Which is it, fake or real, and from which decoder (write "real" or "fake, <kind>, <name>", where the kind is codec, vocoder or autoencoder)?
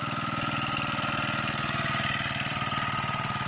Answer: real